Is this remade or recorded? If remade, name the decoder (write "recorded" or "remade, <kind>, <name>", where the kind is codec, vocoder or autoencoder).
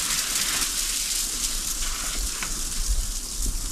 recorded